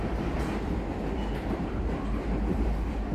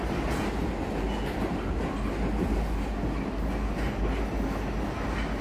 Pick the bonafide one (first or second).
second